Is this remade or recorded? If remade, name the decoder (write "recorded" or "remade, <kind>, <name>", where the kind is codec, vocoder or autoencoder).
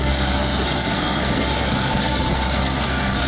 remade, codec, SNAC